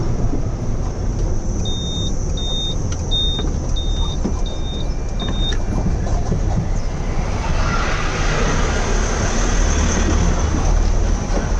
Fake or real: real